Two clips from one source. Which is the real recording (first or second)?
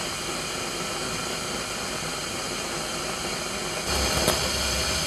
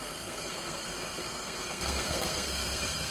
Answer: first